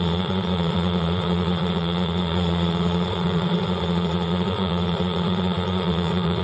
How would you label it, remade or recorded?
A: remade